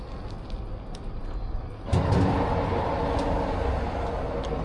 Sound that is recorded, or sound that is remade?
recorded